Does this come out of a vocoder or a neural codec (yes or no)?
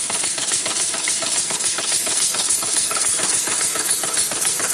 yes